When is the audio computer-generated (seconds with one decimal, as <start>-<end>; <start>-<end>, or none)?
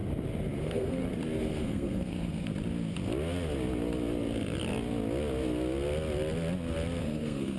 0.6-1.0; 1.6-2.5; 7.0-7.6